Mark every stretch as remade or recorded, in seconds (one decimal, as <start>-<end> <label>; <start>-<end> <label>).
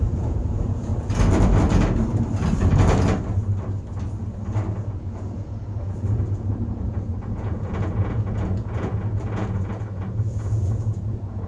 0.0-0.9 remade; 0.9-4.9 recorded; 4.9-11.5 remade